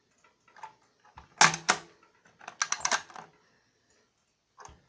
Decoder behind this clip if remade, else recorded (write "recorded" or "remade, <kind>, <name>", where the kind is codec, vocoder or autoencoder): recorded